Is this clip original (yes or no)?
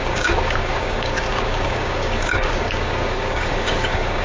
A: no